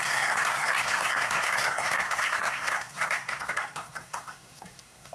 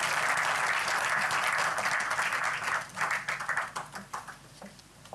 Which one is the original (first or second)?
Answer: second